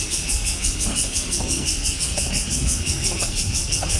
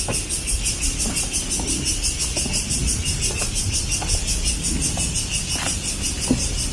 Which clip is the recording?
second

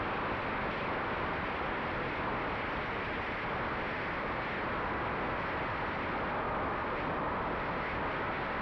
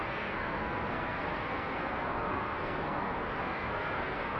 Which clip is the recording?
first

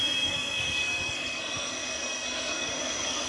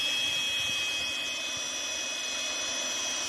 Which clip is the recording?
second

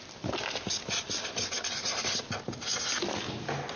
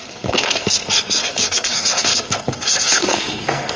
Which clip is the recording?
first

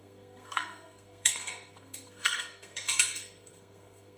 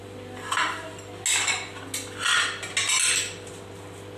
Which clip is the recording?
second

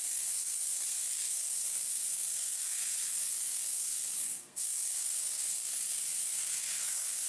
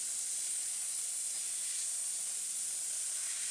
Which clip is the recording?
second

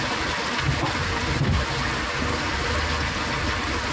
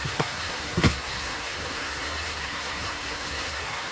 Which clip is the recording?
first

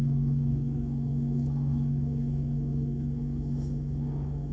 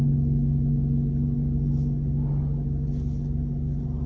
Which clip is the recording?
second